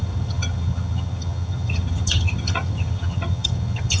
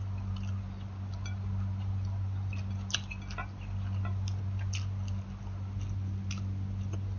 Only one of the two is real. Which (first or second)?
second